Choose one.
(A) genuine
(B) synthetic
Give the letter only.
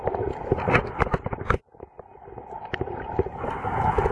A